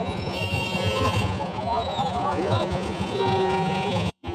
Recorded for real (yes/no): no